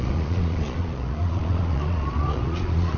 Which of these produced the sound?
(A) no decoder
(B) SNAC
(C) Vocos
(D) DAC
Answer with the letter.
C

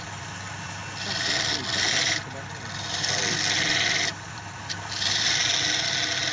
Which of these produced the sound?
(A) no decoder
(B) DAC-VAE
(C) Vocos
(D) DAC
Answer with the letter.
A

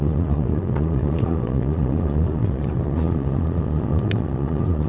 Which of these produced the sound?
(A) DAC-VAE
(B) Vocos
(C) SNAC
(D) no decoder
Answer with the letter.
B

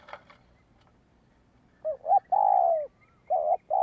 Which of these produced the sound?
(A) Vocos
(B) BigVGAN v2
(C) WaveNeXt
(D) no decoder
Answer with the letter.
D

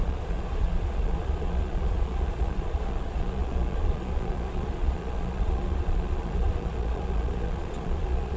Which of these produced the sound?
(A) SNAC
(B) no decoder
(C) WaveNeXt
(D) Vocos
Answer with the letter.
D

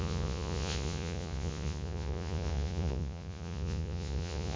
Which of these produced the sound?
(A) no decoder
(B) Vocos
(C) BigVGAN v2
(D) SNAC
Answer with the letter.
B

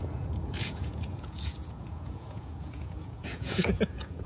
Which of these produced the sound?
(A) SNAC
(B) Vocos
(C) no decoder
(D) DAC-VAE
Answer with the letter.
B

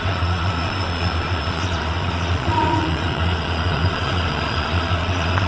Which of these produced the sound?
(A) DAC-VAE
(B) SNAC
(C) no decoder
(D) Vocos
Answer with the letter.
D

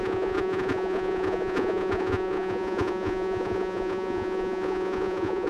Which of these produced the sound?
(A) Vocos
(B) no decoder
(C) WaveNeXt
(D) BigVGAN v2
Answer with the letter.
A